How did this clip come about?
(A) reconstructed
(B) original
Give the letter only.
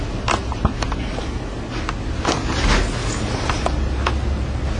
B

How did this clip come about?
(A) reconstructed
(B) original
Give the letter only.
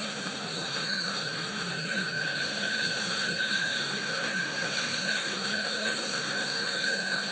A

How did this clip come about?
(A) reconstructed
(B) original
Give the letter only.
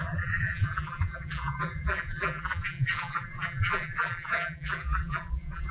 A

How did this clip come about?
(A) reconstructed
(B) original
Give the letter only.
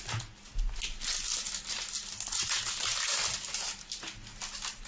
B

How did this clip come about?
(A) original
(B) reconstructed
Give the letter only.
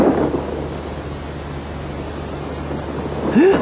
A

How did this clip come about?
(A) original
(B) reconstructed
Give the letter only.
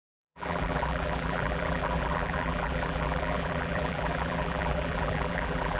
B